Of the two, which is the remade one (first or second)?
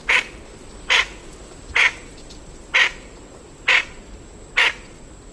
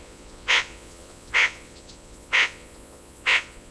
second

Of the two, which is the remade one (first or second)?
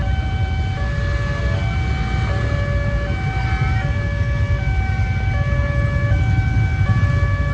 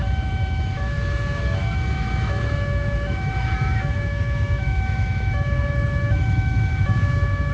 second